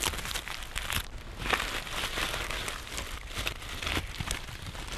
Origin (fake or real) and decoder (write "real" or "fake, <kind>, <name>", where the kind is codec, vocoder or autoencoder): real